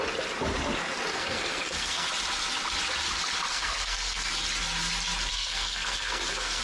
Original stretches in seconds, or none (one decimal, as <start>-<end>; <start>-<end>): 0.0-1.1; 2.1-3.5; 4.3-5.3